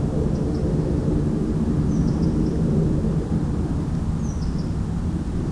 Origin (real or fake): real